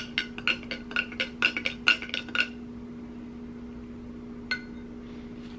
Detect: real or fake real